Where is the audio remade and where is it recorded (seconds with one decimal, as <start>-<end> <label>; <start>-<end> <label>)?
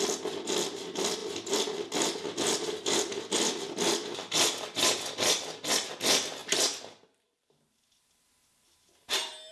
0.0-9.5 recorded